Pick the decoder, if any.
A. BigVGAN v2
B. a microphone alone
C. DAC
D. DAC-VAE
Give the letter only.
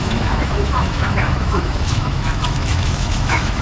D